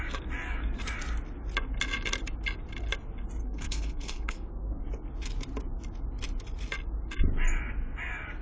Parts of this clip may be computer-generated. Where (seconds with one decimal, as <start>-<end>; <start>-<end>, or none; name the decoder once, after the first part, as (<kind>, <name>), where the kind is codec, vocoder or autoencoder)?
3.4-4.8 (codec, SNAC)